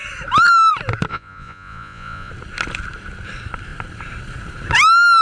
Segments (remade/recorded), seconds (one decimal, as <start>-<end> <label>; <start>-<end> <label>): 0.0-1.1 recorded; 1.1-2.3 remade; 2.3-5.2 recorded